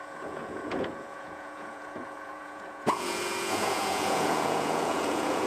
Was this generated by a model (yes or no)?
yes